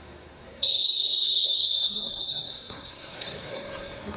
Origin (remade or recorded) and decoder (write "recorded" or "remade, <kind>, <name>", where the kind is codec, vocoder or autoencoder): remade, codec, SNAC